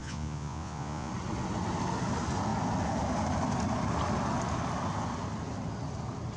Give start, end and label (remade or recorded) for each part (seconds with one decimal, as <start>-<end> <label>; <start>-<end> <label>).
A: 0.0-1.1 remade; 1.1-6.4 recorded